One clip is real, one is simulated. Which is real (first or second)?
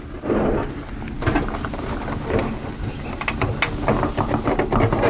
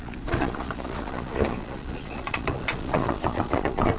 first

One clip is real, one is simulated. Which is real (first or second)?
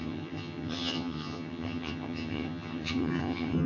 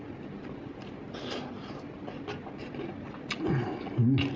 second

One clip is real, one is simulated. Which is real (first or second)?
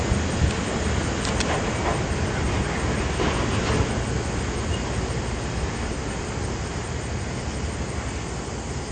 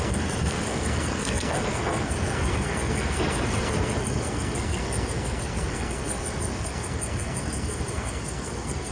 first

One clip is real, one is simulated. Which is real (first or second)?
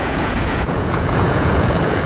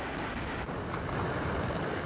second